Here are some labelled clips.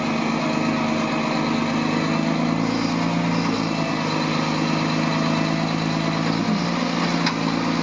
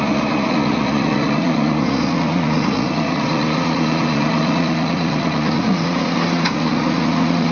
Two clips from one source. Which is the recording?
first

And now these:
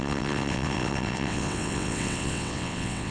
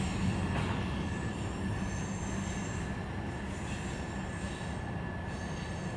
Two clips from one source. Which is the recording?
second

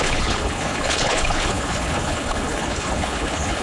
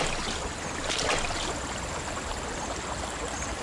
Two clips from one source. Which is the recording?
second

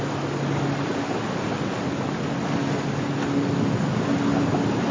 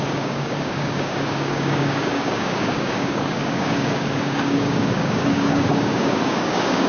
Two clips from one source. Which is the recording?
first